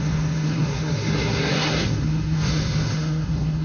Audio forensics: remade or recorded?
remade